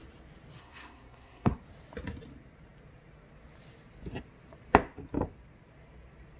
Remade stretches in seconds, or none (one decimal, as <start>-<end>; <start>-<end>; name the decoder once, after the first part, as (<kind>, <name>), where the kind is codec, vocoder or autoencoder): 0.6-1.6 (codec, SNAC)